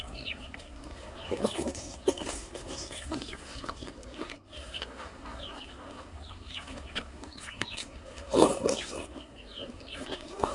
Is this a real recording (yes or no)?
no